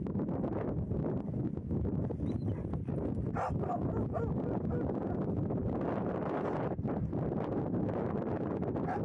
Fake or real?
fake